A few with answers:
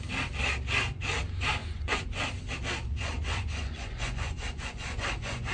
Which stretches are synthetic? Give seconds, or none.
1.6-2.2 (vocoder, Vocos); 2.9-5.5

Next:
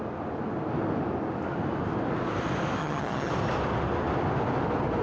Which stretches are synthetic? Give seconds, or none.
2.8-3.3 (vocoder, HiFi-GAN)

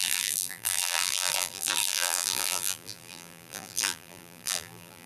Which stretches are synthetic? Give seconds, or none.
0.0-5.1 (vocoder, BigVGAN v2)

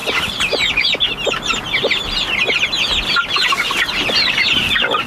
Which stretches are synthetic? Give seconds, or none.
none

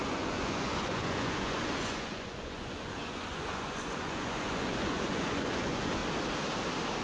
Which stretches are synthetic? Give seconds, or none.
0.0-6.0 (vocoder, Vocos)

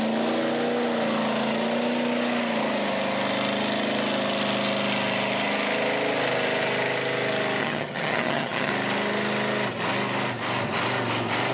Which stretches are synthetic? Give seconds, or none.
7.6-8.7 (vocoder, HiFi-GAN)

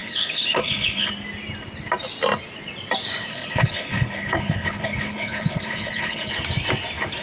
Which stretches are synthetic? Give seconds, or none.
0.0-1.1 (codec, HILCodec); 3.3-6.3